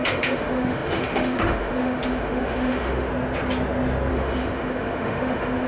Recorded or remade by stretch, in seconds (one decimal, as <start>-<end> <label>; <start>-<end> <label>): 0.0-3.1 remade; 3.1-4.1 recorded; 4.1-5.7 remade